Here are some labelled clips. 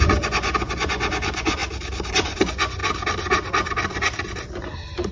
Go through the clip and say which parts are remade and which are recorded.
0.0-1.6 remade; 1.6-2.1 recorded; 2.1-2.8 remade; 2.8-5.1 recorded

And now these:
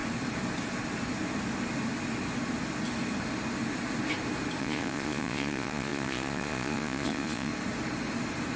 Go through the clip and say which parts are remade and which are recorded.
0.0-4.6 recorded; 4.6-7.5 remade; 7.5-8.6 recorded

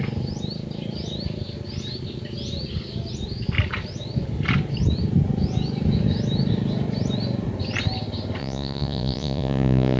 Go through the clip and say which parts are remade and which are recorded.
0.0-8.4 recorded; 8.4-10.0 remade

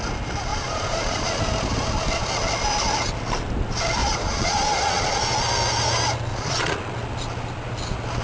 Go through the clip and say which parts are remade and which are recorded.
0.0-0.5 recorded; 0.5-1.4 remade; 1.4-4.0 recorded; 4.0-5.2 remade; 5.2-6.3 recorded; 6.3-6.9 remade; 6.9-8.2 recorded

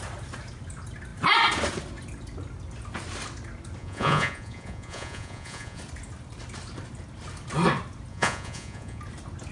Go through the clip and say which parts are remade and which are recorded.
0.0-3.8 recorded; 3.8-5.8 remade; 5.8-8.1 recorded; 8.1-9.0 remade; 9.0-9.5 recorded